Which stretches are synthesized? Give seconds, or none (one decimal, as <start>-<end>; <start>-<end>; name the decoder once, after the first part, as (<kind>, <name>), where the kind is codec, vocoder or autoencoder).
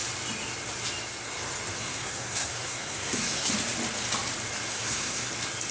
1.7-3.5 (codec, SNAC); 4.7-5.3